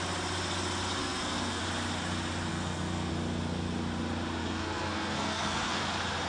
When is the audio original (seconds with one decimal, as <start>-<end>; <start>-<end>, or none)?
0.0-1.0; 1.6-2.5; 3.1-4.4; 5.8-6.3